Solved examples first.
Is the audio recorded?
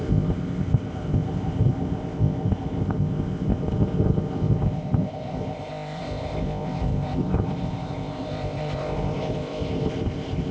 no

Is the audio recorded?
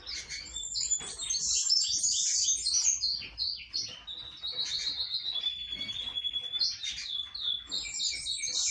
yes